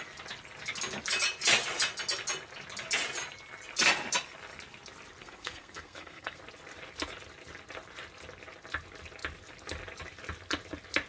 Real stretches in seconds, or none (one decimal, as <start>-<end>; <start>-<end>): 0.0-5.2; 6.4-11.1